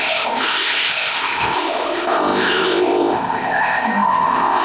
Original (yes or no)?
no